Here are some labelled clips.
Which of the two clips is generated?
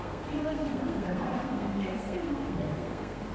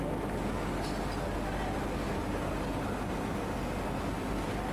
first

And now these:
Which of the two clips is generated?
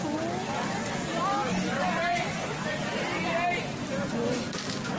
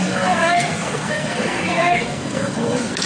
second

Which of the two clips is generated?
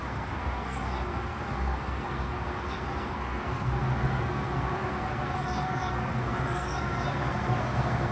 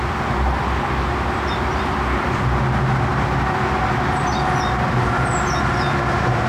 first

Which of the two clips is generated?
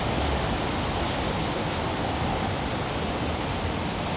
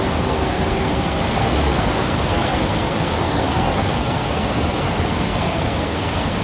second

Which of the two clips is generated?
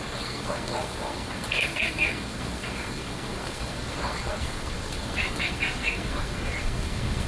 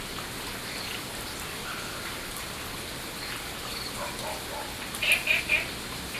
first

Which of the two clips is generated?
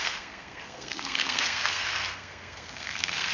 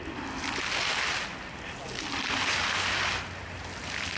first